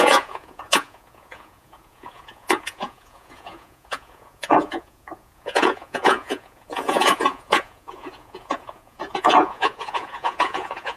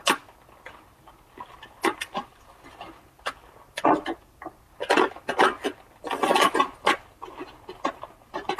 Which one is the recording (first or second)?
second